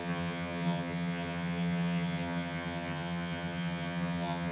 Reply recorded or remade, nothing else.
remade